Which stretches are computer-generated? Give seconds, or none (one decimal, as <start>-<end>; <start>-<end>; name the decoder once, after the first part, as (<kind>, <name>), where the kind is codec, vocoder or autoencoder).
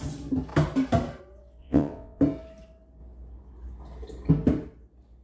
1.6-2.2 (vocoder, WaveNeXt)